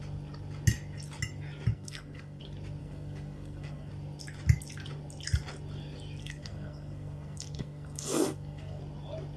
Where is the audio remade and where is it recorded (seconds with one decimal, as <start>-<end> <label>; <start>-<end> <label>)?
0.0-1.7 recorded; 1.7-2.4 remade; 2.4-2.8 recorded; 2.8-3.9 remade; 3.9-6.2 recorded; 6.2-8.8 remade; 8.8-9.4 recorded